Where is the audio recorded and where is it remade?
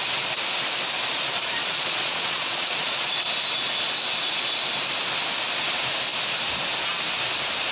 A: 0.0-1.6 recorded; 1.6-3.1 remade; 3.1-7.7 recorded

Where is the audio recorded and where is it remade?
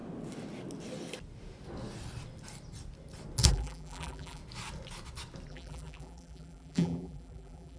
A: 0.0-3.5 recorded; 3.5-4.4 remade; 4.4-5.5 recorded; 5.5-7.8 remade